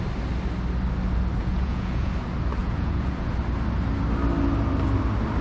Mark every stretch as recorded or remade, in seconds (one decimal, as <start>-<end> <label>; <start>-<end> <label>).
0.0-1.4 recorded; 1.4-2.1 remade; 2.1-2.6 recorded; 2.6-3.3 remade; 3.3-5.4 recorded